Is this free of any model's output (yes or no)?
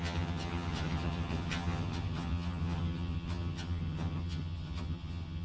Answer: no